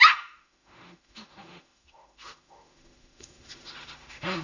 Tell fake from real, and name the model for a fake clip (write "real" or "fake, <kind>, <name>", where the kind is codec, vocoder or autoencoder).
fake, autoencoder, DAC-VAE